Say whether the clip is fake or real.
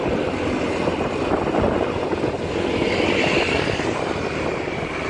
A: real